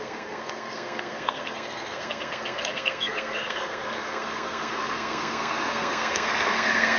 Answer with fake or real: fake